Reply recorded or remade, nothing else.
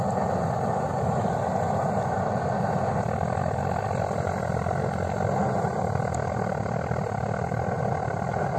recorded